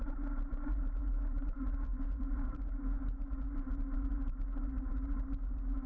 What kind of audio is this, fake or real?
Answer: fake